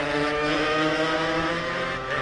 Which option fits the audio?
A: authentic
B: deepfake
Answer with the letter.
B